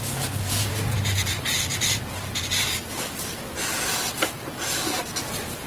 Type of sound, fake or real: real